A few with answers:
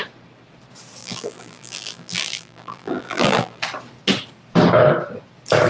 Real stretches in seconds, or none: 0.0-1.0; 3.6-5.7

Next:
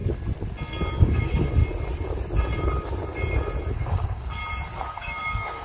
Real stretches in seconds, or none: 0.0-1.0; 1.6-3.7; 4.4-4.9